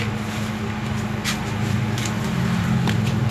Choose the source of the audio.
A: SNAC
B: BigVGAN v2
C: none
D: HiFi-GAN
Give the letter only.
C